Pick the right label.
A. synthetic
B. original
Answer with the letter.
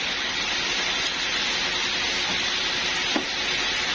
B